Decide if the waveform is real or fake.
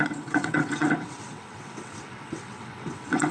fake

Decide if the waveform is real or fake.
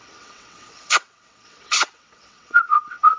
fake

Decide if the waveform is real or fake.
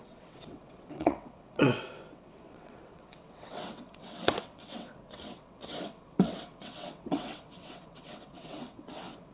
fake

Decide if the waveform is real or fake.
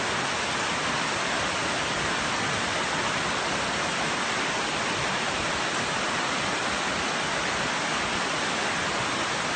real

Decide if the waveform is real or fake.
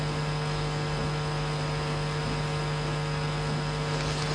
real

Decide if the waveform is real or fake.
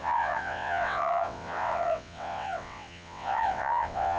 fake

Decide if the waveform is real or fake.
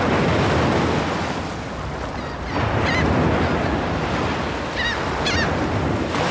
real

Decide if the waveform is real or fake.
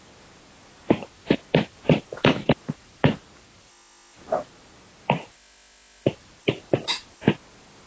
real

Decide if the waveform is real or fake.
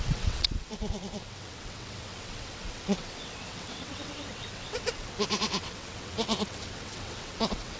fake